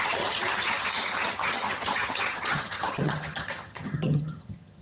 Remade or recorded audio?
remade